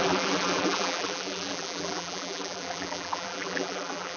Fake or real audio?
fake